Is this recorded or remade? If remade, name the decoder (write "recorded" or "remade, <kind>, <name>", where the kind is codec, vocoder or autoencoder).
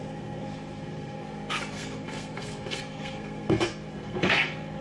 remade, codec, SNAC